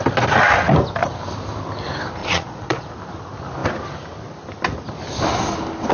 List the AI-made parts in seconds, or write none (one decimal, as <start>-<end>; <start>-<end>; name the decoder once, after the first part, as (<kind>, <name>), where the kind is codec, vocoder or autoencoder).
2.2-2.9 (vocoder, Vocos)